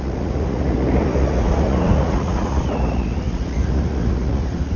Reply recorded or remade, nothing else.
remade